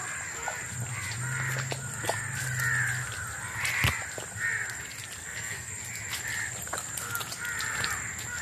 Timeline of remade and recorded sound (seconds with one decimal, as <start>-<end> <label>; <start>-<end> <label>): 0.0-5.2 recorded; 5.2-5.7 remade; 5.7-8.4 recorded